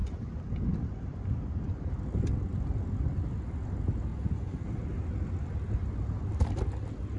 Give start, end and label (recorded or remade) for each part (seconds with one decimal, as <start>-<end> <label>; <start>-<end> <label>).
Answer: 0.0-4.1 recorded; 4.1-4.6 remade; 4.6-7.2 recorded